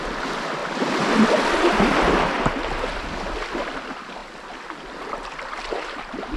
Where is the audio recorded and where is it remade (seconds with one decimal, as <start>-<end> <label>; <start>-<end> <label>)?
0.0-6.4 recorded